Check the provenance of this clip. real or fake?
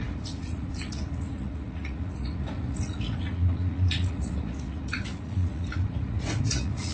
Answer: fake